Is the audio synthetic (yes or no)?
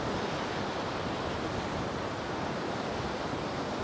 no